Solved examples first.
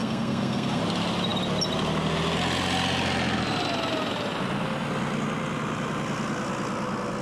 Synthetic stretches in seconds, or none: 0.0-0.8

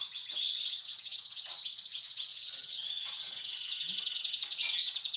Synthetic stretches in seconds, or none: 0.0-5.2

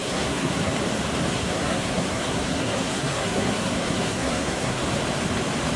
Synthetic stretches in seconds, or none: 0.0-0.7; 1.3-4.8